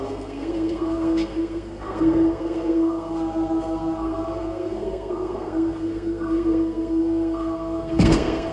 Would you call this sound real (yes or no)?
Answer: no